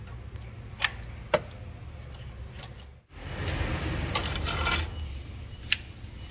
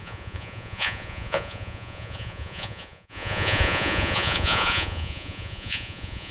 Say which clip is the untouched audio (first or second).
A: first